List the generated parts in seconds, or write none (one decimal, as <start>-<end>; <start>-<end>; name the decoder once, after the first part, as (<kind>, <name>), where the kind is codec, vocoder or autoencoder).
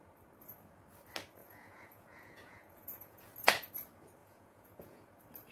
1.4-3.3 (vocoder, Vocos); 4.2-5.1